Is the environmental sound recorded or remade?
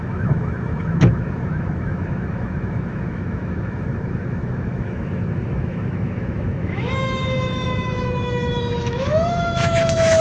remade